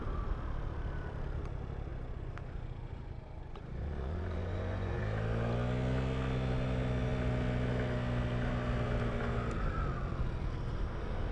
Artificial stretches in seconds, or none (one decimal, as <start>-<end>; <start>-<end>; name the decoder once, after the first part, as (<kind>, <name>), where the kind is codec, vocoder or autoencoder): 1.9-5.0 (vocoder, Vocos)